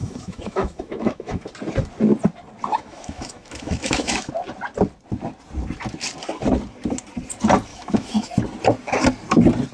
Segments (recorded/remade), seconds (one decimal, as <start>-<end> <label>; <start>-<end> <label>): 0.0-1.5 remade; 1.5-2.7 recorded; 2.7-4.3 remade; 4.3-7.7 recorded; 7.7-8.3 remade; 8.3-9.7 recorded